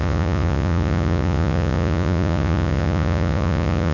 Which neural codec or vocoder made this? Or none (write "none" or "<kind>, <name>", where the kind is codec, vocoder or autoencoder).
vocoder, Vocos